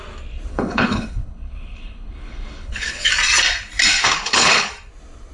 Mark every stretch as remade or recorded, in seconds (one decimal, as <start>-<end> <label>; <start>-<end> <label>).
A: 0.0-0.5 recorded; 0.5-3.1 remade; 3.1-4.0 recorded; 4.0-4.7 remade; 4.7-5.3 recorded